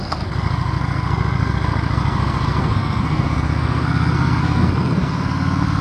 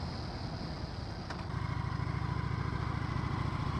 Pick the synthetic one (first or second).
first